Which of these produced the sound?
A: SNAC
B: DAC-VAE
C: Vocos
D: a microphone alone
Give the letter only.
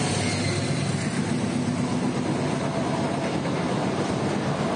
D